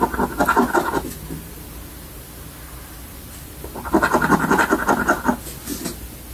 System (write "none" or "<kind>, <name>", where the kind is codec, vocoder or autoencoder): none